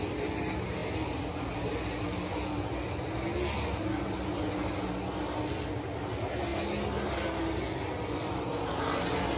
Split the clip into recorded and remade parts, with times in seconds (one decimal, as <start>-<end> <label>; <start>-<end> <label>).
0.0-9.4 recorded